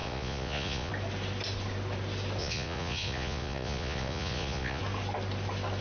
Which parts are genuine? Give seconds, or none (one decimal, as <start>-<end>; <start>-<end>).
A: 0.9-2.4; 4.8-5.8